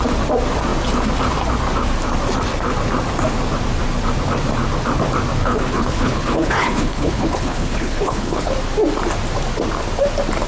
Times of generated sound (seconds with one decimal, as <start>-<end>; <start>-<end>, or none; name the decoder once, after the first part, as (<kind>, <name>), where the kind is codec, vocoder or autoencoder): 5.4-8.5 (codec, HILCodec)